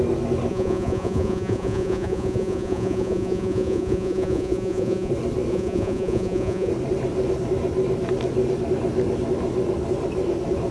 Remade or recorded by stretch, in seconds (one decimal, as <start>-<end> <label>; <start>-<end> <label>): 0.0-0.5 recorded; 0.5-5.1 remade; 5.1-5.5 recorded; 5.5-6.7 remade; 6.7-10.7 recorded